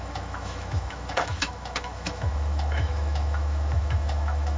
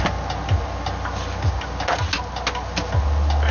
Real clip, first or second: second